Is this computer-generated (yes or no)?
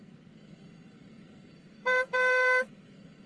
yes